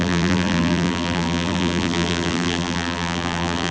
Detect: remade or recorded remade